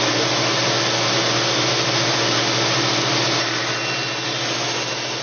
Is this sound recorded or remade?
recorded